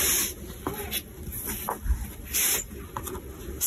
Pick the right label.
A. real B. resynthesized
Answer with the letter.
A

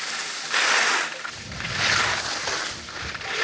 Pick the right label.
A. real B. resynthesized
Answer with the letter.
A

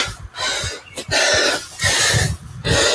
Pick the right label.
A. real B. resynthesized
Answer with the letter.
A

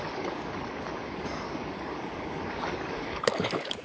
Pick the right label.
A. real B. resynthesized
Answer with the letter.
B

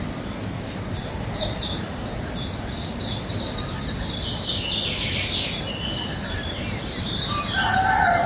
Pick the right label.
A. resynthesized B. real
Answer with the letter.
B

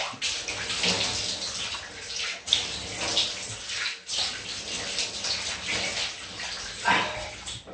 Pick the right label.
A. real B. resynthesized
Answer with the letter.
A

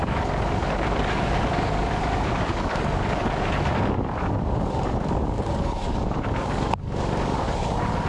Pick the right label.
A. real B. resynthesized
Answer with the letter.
B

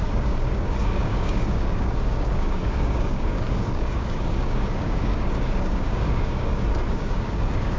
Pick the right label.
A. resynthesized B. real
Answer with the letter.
A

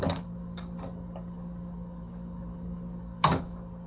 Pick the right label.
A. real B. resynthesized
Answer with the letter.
B